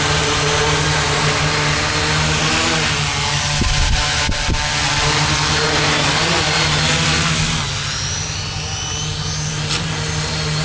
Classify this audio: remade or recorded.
recorded